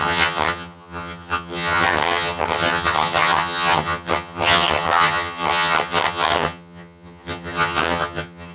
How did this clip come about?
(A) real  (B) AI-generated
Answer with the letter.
B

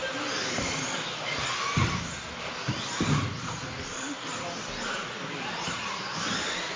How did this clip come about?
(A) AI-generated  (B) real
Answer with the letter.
B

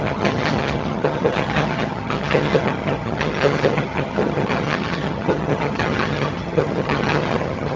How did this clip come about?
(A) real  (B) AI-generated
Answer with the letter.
B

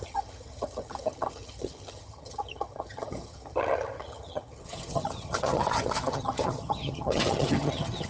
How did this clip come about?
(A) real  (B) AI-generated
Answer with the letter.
B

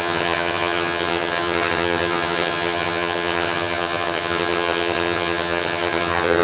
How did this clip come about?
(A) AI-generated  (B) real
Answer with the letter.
A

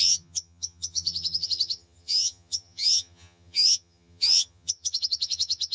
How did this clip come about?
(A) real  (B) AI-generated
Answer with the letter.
B